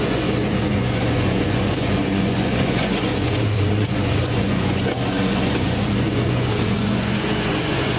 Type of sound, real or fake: fake